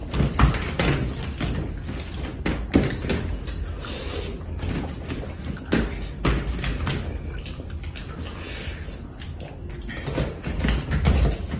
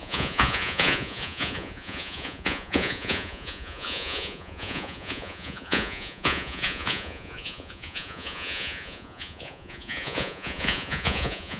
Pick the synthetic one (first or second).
second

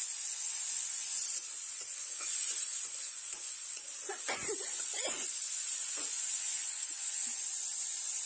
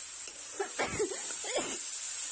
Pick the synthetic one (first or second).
first